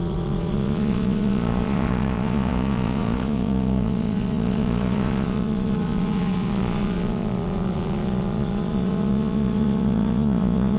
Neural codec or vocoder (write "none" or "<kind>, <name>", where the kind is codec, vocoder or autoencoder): vocoder, Vocos